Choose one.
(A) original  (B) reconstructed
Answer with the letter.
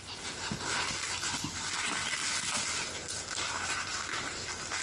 A